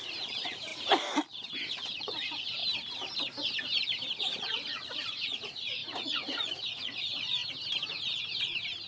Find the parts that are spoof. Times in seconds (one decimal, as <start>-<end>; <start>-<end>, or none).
0.0-0.7; 1.7-2.6; 4.2-7.4